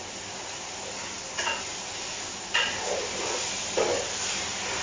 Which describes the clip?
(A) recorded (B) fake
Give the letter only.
A